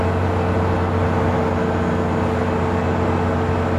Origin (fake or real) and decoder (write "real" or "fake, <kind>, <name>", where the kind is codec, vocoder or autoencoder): real